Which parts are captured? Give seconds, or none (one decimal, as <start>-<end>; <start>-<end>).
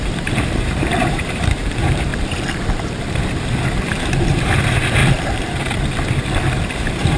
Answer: 2.1-3.8; 5.0-6.8